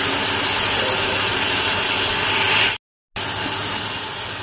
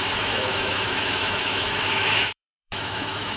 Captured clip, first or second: first